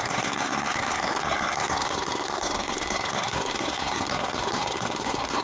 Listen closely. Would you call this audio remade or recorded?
remade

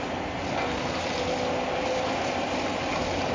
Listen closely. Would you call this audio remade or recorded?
recorded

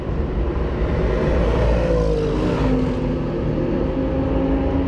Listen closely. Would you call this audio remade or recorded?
recorded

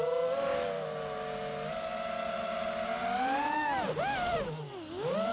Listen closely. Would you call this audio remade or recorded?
recorded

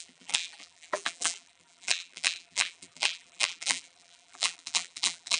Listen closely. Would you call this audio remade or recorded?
remade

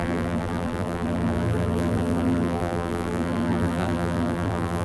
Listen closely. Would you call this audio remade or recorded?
remade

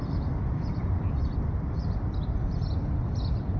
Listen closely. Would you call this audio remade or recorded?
remade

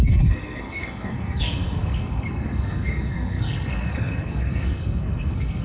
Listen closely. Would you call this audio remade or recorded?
remade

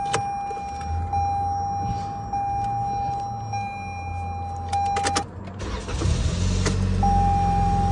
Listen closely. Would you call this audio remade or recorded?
recorded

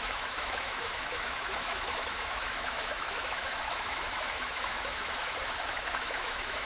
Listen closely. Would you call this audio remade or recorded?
remade